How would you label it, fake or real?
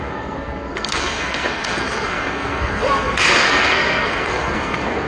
fake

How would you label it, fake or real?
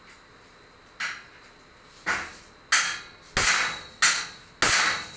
real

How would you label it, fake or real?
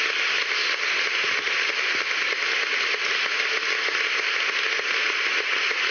real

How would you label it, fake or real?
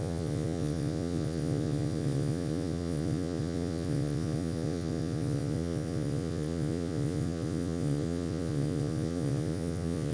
fake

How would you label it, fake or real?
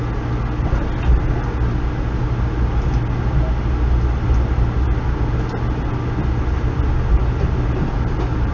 real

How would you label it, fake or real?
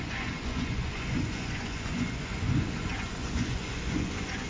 fake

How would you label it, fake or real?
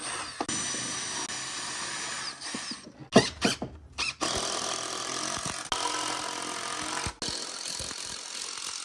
real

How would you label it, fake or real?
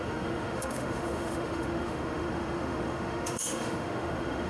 fake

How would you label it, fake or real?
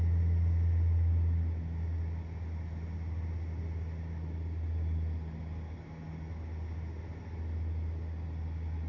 real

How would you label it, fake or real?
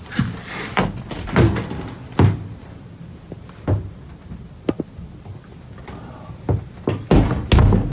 real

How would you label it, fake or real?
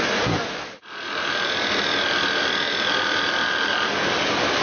real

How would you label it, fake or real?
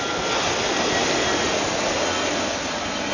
real